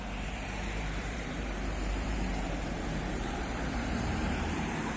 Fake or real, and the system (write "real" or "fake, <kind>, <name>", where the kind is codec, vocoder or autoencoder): fake, vocoder, BigVGAN v2